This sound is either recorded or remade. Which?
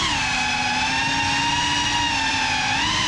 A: recorded